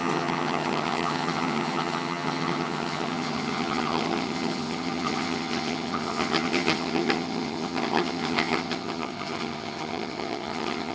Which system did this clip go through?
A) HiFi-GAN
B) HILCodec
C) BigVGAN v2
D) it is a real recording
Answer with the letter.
A